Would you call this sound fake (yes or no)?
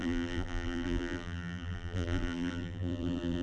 yes